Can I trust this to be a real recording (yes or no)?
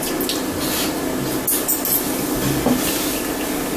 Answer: yes